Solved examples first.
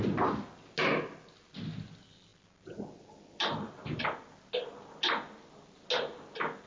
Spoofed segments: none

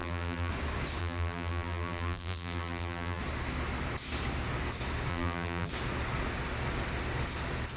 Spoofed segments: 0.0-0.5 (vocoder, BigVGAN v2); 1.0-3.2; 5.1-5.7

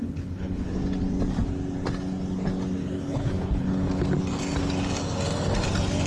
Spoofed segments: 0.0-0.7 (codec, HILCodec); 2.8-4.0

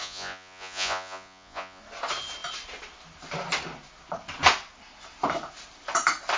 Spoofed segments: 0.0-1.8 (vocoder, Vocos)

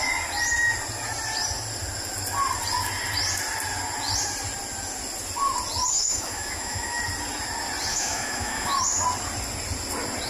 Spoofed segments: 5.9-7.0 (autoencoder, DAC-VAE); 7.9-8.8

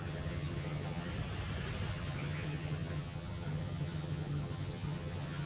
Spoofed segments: 0.0-1.1 (vocoder, HiFi-GAN); 1.9-5.5

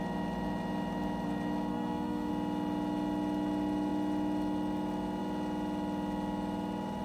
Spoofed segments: 1.7-2.3 (codec, SNAC)